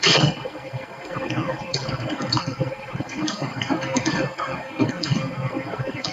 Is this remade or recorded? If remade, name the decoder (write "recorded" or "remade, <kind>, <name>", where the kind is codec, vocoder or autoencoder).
remade, codec, SNAC